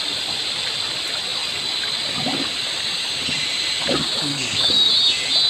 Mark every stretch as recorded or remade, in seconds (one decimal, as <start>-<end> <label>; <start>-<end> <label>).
0.0-4.3 recorded; 4.3-4.9 remade; 4.9-5.5 recorded